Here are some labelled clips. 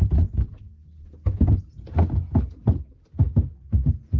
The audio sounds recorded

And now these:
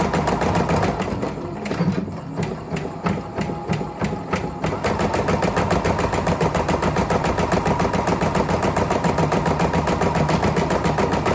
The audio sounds recorded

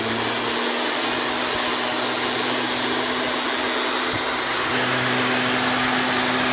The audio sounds recorded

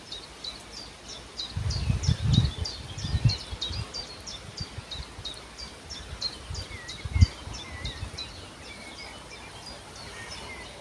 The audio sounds recorded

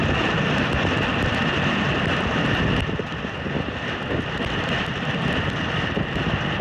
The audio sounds recorded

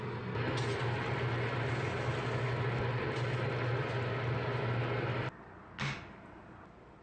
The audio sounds recorded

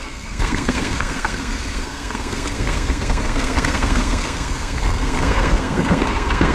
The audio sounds remade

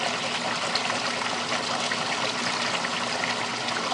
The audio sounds recorded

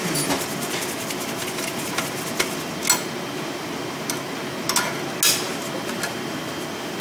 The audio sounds recorded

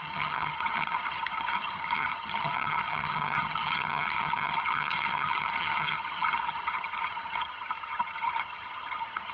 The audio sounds remade